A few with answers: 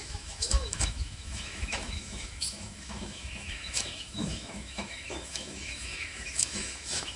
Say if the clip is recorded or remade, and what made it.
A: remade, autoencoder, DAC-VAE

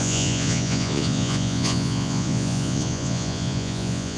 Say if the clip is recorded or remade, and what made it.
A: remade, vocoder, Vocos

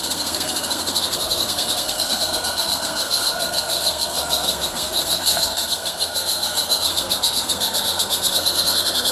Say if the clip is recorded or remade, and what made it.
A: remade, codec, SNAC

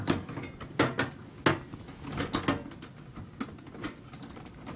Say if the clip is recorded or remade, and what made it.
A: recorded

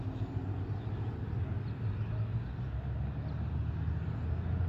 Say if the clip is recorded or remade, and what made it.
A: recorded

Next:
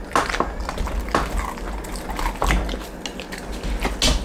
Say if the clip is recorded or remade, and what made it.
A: recorded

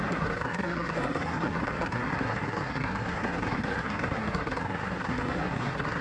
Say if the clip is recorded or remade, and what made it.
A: remade, codec, SNAC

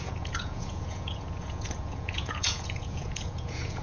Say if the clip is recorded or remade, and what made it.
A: remade, vocoder, Vocos